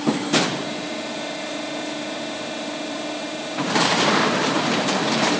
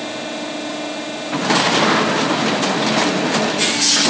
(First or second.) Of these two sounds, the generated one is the first